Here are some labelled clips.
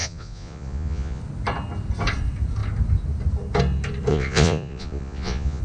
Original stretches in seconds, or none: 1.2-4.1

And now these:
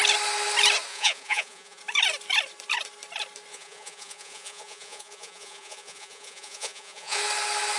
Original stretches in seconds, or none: 0.0-0.9; 1.8-3.5; 7.2-7.8

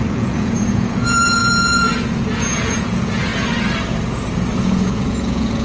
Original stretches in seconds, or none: 3.3-4.6

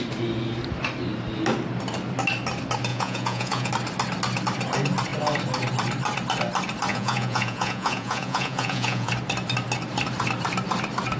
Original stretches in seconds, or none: 0.0-2.9; 3.7-6.9; 9.1-11.2